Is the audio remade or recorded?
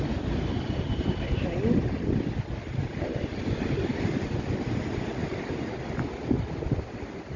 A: recorded